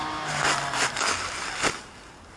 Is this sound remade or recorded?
recorded